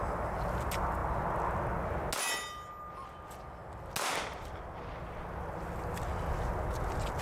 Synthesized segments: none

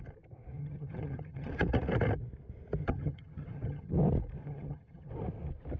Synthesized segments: 0.6-1.5 (vocoder, HiFi-GAN); 2.8-3.9; 4.4-5.1

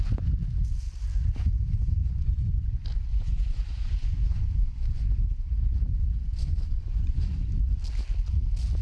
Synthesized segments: 1.8-2.6 (vocoder, Vocos); 3.1-5.2; 6.2-7.3

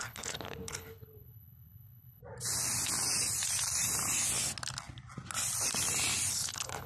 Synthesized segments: 0.0-2.2 (codec, HILCodec); 6.3-6.9

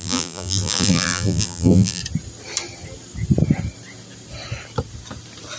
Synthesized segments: 0.0-2.0 (vocoder, BigVGAN v2)